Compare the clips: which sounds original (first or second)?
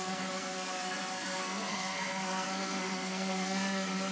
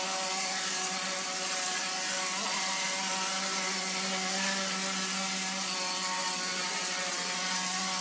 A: second